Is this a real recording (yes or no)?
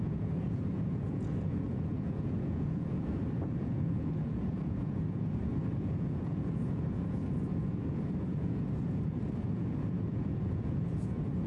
no